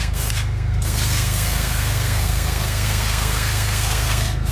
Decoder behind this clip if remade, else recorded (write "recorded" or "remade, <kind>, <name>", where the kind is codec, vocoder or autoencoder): remade, codec, SNAC